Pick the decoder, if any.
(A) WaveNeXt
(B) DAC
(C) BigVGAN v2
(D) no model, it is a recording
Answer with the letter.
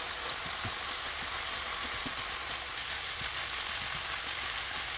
D